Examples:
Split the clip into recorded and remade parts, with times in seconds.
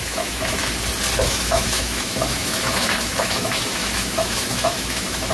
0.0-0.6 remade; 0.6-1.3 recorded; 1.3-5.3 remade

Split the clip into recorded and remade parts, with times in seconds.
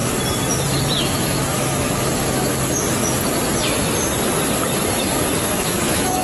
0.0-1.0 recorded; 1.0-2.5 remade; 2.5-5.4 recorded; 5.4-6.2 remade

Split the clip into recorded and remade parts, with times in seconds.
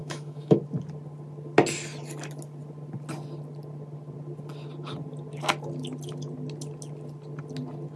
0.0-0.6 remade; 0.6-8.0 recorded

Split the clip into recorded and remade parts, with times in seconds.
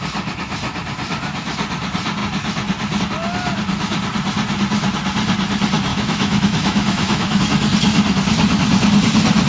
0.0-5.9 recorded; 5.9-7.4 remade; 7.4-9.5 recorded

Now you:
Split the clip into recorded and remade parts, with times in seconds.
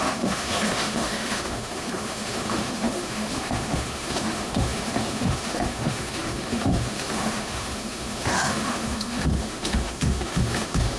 0.0-11.0 remade